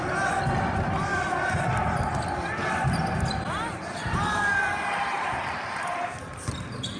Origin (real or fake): real